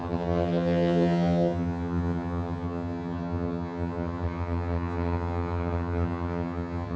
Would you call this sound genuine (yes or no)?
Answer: no